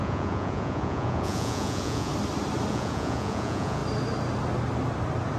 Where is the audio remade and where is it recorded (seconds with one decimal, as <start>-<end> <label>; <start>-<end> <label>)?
0.0-2.1 remade; 2.1-2.7 recorded; 2.7-3.8 remade; 3.8-5.4 recorded